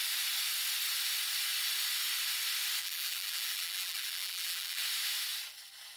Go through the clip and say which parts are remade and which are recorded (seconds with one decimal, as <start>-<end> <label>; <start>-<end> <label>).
0.0-2.8 recorded; 2.8-4.8 remade; 4.8-6.0 recorded